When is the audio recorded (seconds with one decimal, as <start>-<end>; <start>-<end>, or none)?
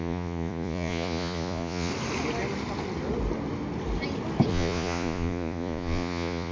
1.9-4.5